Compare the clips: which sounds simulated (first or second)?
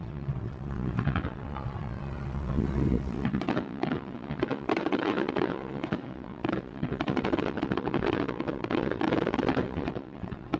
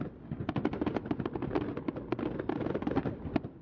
first